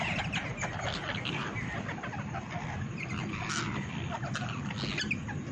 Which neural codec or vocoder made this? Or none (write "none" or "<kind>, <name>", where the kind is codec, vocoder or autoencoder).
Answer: none